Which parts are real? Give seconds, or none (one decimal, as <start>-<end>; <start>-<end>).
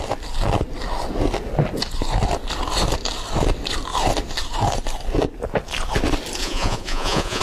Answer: 0.0-6.4